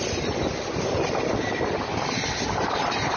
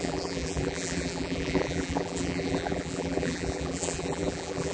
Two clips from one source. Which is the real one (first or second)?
first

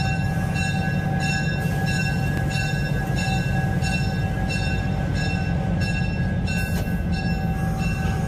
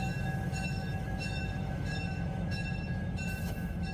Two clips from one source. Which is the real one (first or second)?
first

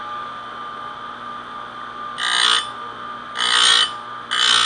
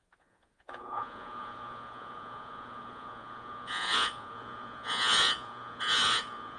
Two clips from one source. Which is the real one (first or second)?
first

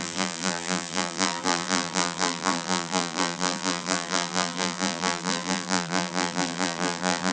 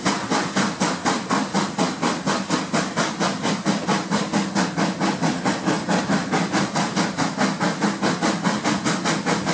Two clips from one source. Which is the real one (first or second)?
second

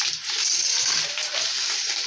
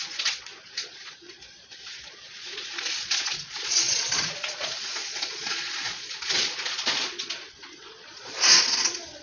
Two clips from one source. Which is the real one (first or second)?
first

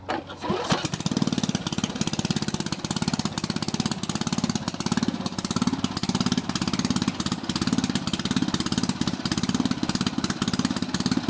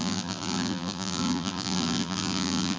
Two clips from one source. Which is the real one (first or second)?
first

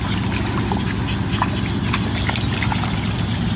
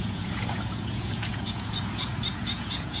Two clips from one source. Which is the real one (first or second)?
first